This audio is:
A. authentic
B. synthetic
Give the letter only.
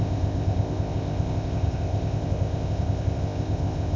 B